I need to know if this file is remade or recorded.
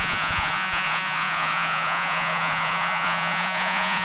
remade